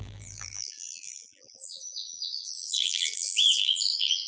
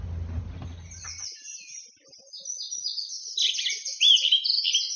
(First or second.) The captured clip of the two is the second